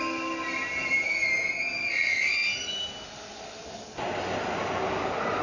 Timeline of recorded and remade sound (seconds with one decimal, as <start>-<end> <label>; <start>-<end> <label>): 0.0-0.8 recorded; 0.8-1.8 remade; 1.8-5.4 recorded

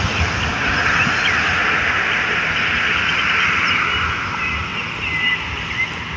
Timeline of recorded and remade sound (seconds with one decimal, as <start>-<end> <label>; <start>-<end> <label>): 0.0-0.5 remade; 0.5-1.8 recorded; 1.8-4.7 remade; 4.7-5.4 recorded; 5.4-6.2 remade

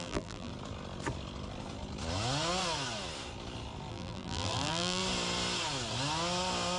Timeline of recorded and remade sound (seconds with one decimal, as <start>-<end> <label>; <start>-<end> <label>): 0.0-0.5 remade; 0.5-3.9 recorded; 3.9-5.0 remade; 5.0-6.8 recorded

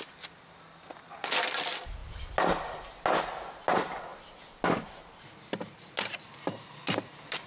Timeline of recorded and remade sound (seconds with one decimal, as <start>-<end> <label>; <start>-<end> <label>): 0.0-7.5 recorded

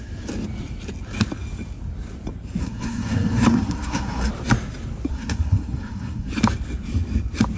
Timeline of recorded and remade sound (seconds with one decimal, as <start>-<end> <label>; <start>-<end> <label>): 0.0-2.6 recorded; 2.6-4.3 remade; 4.3-5.1 recorded; 5.1-6.3 remade; 6.3-7.6 recorded

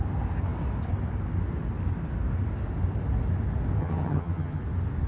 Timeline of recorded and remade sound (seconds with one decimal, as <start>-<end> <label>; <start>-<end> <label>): 0.0-3.8 recorded; 3.8-4.6 remade; 4.6-5.1 recorded

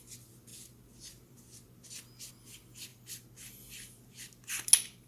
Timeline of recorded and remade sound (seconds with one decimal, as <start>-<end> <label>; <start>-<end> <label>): 0.0-5.1 recorded